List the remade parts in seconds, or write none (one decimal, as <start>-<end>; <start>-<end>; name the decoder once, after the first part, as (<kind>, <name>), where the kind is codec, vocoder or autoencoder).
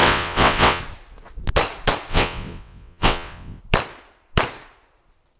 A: 0.0-0.8 (vocoder, WaveNeXt); 2.1-3.6